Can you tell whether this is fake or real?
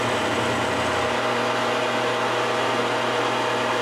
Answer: real